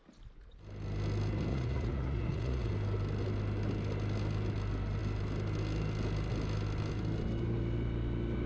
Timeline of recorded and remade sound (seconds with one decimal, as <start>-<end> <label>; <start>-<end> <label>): 0.0-1.5 recorded; 1.5-2.7 remade; 2.7-8.5 recorded